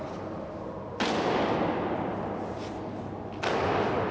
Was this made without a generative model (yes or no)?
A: yes